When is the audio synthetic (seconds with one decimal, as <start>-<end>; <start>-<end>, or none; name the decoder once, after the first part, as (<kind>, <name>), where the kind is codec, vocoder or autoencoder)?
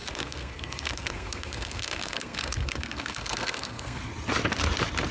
0.0-4.1 (codec, SNAC)